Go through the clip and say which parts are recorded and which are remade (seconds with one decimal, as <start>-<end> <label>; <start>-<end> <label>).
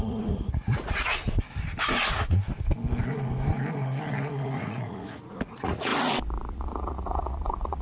0.0-1.1 remade; 1.1-4.1 recorded; 4.1-5.9 remade; 5.9-6.5 recorded; 6.5-7.8 remade